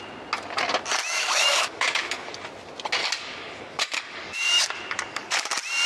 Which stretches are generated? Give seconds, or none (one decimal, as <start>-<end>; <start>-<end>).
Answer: 1.2-2.3; 3.0-5.5